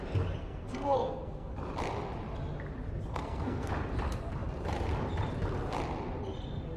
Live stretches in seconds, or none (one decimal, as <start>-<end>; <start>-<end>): 0.0-0.4; 1.5-3.1; 3.7-6.8